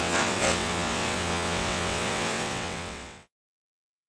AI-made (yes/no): yes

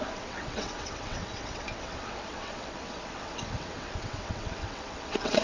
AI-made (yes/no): yes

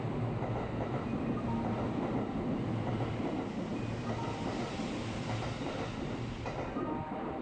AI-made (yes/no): no